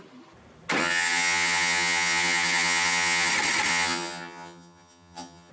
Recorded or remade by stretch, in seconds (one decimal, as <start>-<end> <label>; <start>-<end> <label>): 0.0-0.8 recorded; 0.8-3.3 remade; 3.3-3.7 recorded; 3.7-5.5 remade